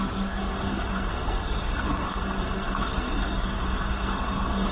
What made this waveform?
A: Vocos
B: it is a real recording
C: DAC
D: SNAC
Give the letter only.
D